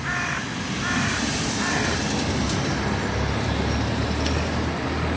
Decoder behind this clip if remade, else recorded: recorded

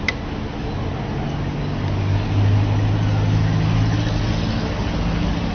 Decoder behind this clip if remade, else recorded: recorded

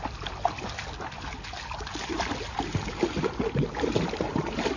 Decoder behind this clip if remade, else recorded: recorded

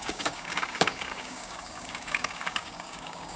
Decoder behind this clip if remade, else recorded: remade, codec, DAC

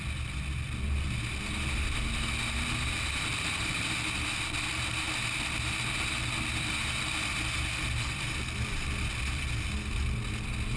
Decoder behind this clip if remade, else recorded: recorded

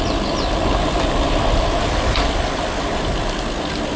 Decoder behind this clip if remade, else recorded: recorded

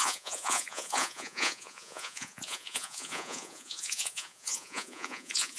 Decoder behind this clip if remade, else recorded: remade, vocoder, Vocos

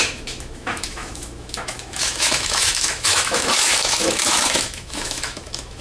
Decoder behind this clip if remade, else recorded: remade, autoencoder, DAC-VAE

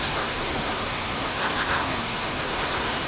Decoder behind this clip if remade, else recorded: remade, codec, SNAC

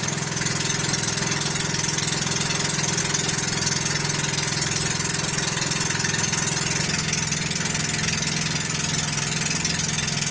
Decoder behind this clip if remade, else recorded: recorded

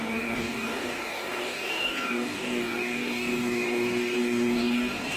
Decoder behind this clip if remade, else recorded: remade, codec, DAC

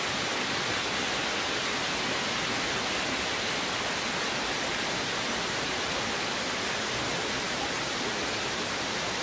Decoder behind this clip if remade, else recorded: recorded